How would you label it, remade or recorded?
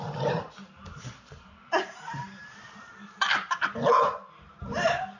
remade